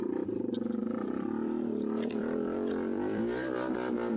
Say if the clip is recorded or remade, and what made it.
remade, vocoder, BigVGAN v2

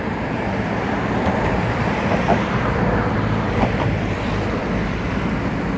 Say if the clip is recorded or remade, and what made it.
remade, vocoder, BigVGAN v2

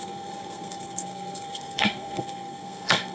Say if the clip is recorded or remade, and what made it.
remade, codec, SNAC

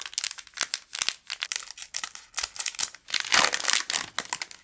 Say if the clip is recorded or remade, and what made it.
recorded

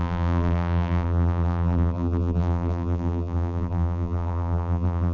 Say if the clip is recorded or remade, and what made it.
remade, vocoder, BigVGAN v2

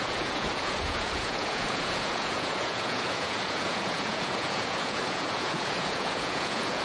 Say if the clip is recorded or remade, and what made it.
remade, vocoder, Vocos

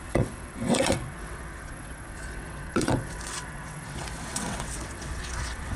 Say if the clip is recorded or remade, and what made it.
remade, vocoder, WaveNeXt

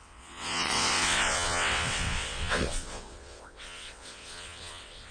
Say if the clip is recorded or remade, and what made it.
remade, vocoder, WaveNeXt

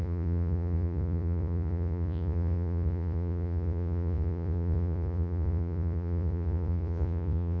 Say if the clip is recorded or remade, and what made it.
remade, vocoder, Vocos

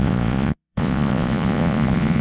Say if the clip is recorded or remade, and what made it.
remade, vocoder, Vocos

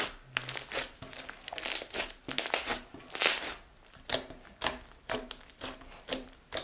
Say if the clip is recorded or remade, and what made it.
recorded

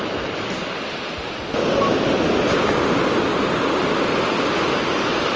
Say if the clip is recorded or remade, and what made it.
recorded